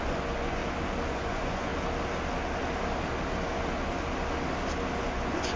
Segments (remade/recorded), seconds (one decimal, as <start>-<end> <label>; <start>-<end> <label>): 0.0-0.6 remade; 0.6-1.1 recorded; 1.1-1.7 remade; 1.7-5.0 recorded; 5.0-5.6 remade